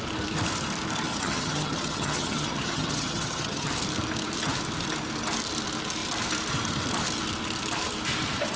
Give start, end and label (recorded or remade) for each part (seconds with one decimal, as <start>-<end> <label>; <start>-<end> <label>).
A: 0.0-1.1 recorded; 1.1-3.7 remade; 3.7-8.6 recorded